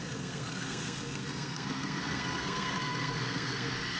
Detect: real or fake fake